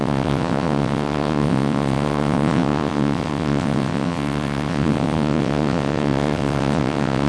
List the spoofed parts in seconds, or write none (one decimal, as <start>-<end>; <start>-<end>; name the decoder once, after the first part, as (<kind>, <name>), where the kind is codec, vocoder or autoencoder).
0.0-7.3 (vocoder, WaveNeXt)